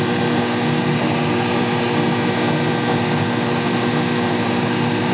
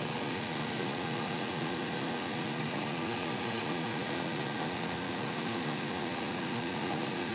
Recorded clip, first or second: first